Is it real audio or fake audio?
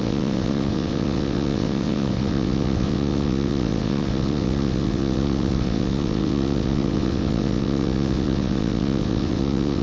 fake